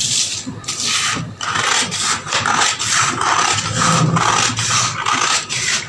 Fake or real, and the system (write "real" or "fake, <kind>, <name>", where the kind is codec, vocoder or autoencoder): real